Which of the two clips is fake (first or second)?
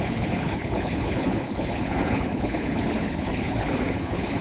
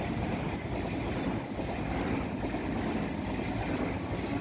first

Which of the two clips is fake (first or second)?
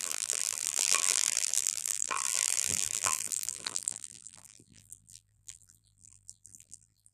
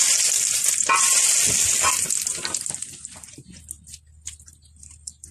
first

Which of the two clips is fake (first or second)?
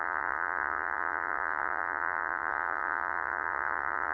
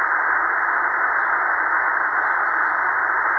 first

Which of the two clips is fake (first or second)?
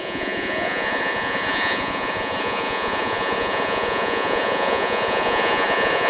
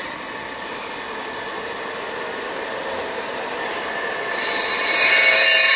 first